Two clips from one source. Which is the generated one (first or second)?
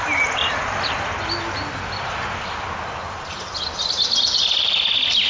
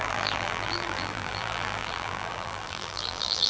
second